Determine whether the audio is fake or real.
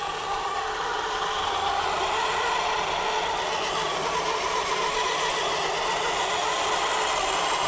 real